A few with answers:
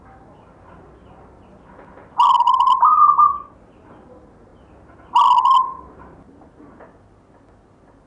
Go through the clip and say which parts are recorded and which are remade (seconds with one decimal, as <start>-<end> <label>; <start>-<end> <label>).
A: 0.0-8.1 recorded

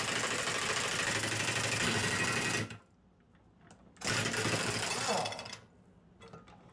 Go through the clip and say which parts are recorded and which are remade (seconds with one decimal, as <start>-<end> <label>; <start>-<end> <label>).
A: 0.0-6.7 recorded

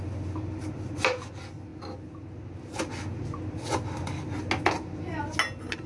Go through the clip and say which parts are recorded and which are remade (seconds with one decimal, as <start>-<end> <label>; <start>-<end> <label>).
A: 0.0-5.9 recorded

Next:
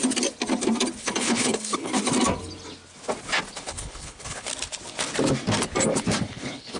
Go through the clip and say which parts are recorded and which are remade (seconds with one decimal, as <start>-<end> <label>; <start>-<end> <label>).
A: 0.0-1.0 recorded; 1.0-1.9 remade; 1.9-3.6 recorded; 3.6-4.5 remade; 4.5-6.3 recorded; 6.3-6.8 remade